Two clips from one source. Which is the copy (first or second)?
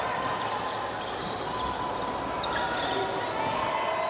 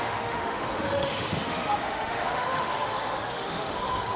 second